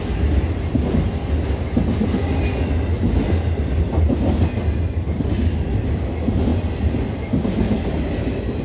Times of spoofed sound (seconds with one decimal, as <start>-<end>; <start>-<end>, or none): none